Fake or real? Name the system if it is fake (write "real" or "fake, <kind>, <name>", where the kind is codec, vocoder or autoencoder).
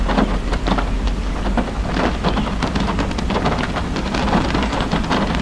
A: real